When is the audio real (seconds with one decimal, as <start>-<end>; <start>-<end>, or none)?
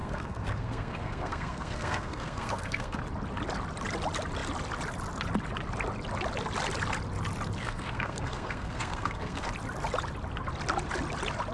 3.0-7.6; 9.5-11.5